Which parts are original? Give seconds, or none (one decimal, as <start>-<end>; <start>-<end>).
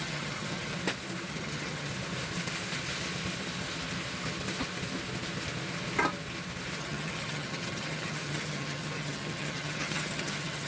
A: 0.7-1.3; 1.9-6.8